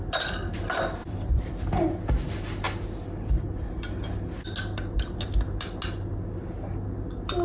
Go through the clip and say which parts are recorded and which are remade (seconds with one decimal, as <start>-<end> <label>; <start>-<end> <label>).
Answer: 0.0-1.0 recorded; 1.0-1.5 remade; 1.5-7.4 recorded